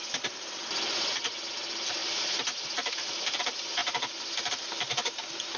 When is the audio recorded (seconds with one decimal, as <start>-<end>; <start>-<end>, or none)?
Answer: 0.0-5.6